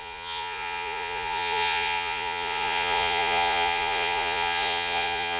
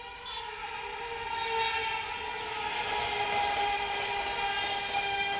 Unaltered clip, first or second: second